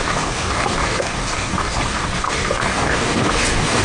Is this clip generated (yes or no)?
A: yes